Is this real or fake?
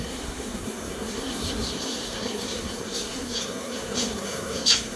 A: fake